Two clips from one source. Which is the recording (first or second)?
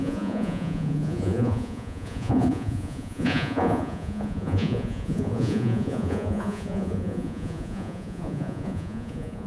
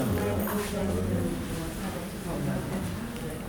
second